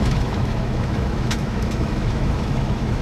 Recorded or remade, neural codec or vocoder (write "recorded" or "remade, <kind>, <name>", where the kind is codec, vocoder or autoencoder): remade, autoencoder, DAC-VAE